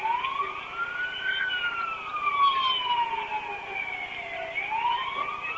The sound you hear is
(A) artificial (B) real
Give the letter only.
B